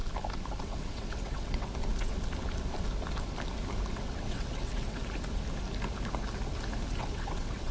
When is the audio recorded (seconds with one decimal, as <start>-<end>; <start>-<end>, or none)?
0.0-0.6; 1.7-3.9; 5.0-6.9